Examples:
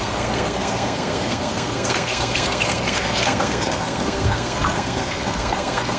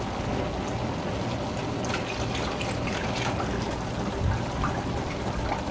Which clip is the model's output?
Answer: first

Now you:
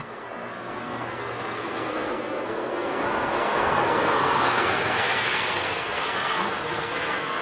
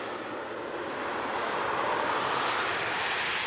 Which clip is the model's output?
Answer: first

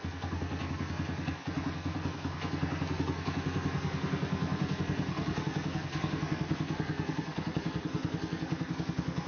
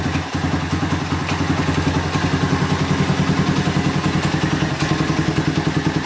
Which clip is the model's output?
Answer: first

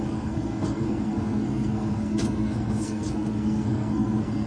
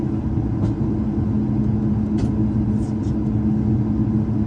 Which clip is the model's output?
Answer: first